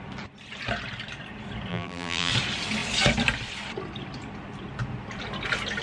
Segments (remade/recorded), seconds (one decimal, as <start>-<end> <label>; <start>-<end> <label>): 0.0-1.7 recorded; 1.7-2.3 remade; 2.3-5.8 recorded